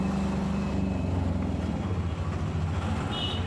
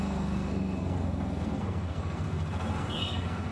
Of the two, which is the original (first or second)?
first